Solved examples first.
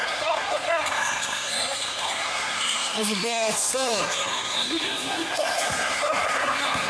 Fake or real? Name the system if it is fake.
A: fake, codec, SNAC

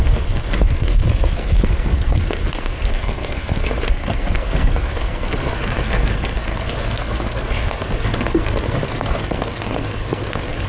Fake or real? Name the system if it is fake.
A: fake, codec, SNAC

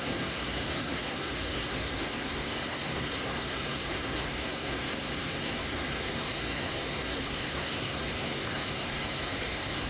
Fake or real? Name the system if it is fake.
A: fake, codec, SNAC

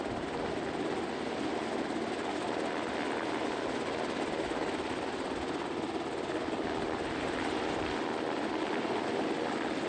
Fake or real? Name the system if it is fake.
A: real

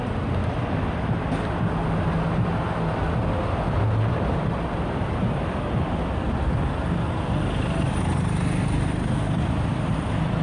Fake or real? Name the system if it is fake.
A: real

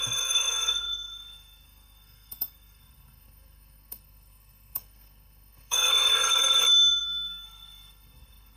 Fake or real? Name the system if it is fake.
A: fake, codec, SNAC